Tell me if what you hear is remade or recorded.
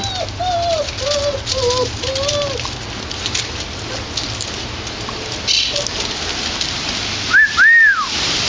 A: recorded